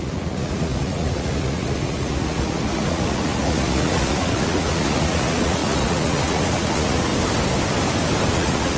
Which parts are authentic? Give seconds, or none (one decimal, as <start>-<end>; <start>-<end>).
7.1-8.3